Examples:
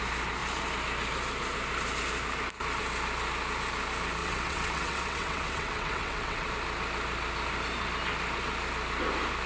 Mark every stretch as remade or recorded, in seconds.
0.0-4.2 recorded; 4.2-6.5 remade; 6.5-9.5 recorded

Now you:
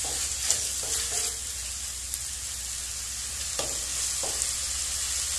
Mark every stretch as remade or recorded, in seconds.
0.0-5.4 recorded